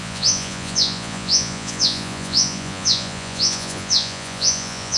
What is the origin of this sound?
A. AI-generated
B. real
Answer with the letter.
A